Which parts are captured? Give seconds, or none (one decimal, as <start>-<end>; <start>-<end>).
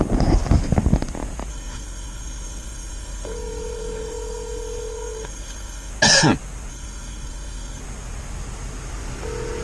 0.0-1.5; 5.9-6.7; 7.8-9.6